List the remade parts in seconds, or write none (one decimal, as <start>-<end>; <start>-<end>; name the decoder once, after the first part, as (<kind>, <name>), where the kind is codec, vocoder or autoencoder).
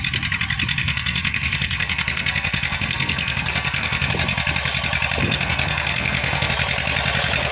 0.8-4.1 (codec, SNAC); 5.2-6.5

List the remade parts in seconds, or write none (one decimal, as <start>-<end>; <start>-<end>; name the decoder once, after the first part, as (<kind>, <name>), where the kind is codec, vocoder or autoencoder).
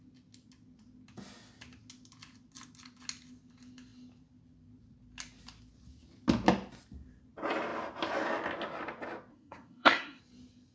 9.3-10.2 (codec, SNAC)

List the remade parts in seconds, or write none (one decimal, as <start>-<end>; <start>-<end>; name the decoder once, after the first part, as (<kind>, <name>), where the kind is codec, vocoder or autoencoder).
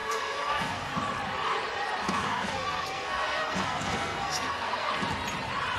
0.0-1.0 (codec, SNAC); 2.0-4.9